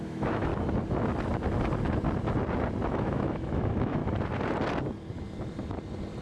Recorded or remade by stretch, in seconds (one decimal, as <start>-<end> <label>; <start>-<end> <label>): 0.0-0.5 remade; 0.5-2.9 recorded; 2.9-4.0 remade; 4.0-6.2 recorded